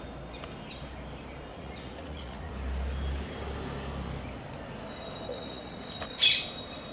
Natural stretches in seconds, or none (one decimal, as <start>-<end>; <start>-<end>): 0.0-1.5; 2.5-5.3; 5.9-6.9